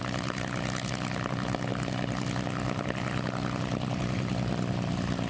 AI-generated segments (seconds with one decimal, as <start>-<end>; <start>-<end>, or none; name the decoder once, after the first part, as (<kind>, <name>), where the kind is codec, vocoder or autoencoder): 0.0-0.9 (vocoder, BigVGAN v2); 1.7-5.3